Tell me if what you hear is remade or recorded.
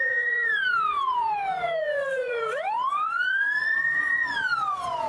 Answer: remade